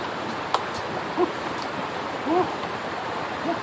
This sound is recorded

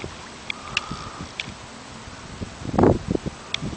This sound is recorded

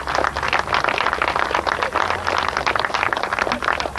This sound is recorded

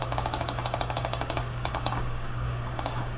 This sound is remade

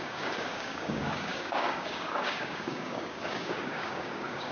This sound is remade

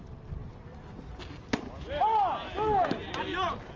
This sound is recorded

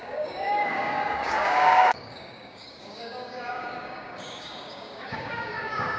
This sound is remade